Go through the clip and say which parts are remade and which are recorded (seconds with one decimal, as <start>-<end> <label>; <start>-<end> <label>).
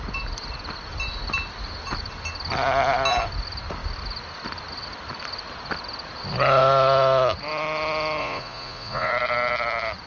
0.0-8.2 recorded; 8.2-9.1 remade; 9.1-10.1 recorded